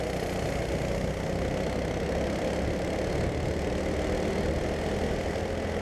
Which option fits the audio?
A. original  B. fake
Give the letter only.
A